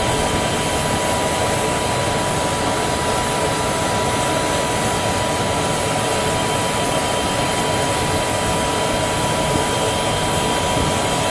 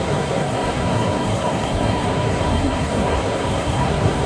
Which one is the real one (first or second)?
first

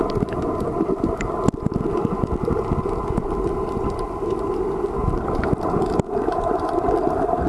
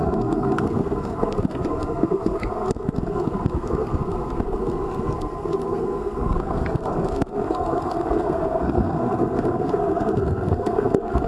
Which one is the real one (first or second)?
first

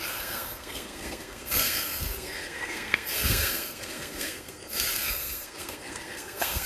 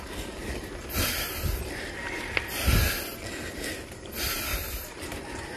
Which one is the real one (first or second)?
second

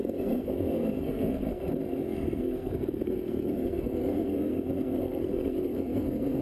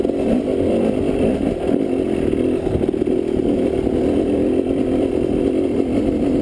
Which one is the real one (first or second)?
second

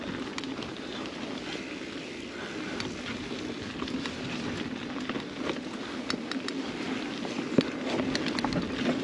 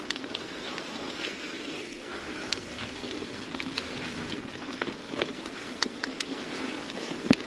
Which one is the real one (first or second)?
first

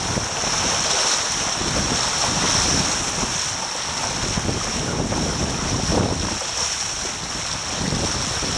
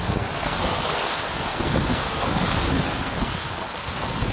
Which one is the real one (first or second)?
first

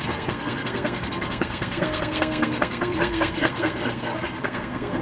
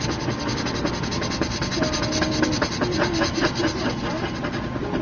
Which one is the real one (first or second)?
second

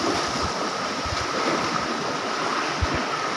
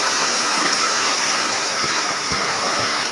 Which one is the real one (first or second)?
first